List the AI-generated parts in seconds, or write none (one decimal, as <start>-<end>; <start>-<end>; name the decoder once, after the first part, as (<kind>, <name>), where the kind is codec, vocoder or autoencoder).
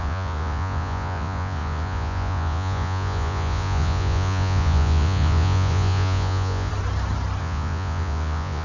0.0-6.7 (vocoder, Vocos); 7.4-8.6